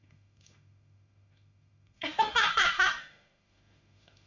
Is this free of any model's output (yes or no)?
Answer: no